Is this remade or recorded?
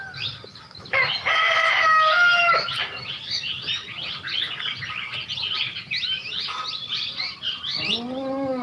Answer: recorded